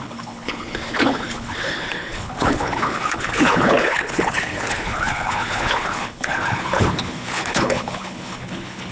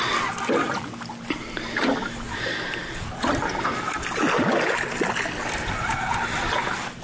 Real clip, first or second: second